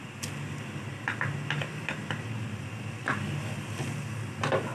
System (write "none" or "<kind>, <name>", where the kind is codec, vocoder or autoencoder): none